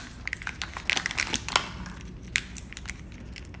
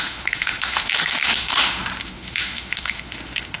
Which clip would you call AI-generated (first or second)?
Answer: second